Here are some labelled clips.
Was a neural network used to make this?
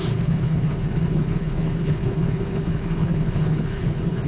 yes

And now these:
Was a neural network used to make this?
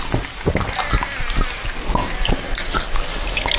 no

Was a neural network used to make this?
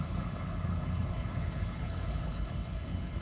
yes